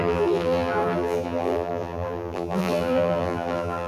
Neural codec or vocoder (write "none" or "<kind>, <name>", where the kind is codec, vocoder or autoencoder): vocoder, BigVGAN v2